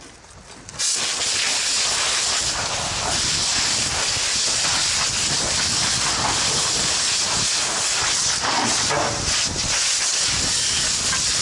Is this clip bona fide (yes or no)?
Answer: yes